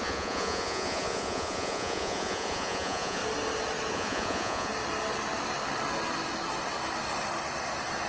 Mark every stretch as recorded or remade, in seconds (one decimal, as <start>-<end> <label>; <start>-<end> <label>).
0.0-3.2 remade; 3.2-3.9 recorded; 3.9-4.7 remade; 4.7-8.1 recorded